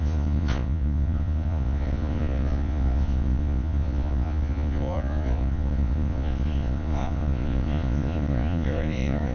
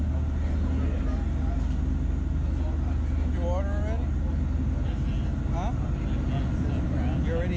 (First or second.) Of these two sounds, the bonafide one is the second